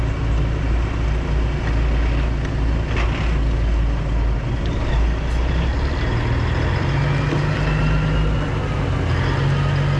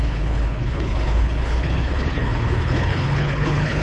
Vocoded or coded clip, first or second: second